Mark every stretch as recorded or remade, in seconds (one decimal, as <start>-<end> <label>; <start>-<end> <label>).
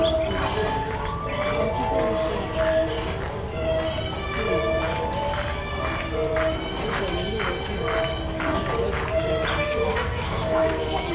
0.0-9.6 recorded; 9.6-11.1 remade